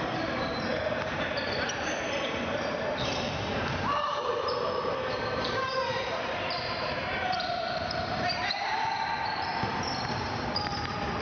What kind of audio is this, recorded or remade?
remade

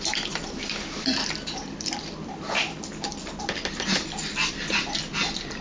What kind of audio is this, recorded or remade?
remade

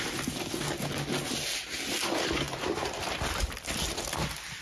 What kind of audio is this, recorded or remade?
remade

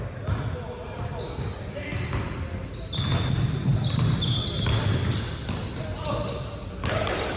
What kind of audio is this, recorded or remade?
recorded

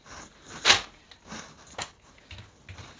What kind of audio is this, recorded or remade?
recorded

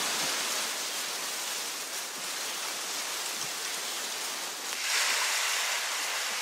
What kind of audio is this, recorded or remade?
recorded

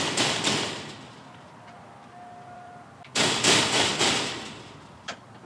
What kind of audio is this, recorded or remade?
remade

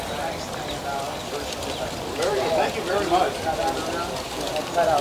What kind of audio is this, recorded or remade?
recorded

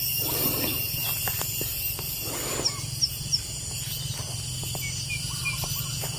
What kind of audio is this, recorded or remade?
recorded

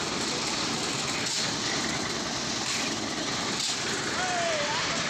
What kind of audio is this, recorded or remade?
remade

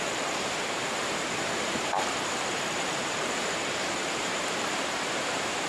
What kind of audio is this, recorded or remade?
remade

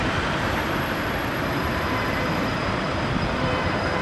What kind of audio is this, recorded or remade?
remade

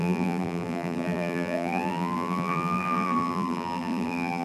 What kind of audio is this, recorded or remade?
remade